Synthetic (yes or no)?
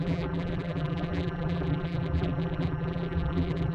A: yes